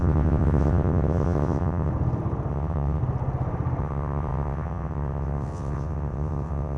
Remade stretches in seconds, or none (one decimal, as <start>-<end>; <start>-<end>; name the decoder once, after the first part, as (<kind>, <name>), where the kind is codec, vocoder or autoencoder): 0.0-1.9 (vocoder, WaveNeXt); 2.5-3.0; 3.8-6.8